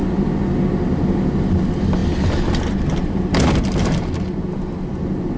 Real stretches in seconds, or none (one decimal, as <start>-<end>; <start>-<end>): 0.0-5.4